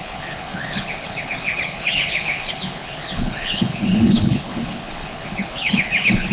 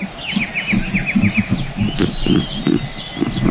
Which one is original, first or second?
second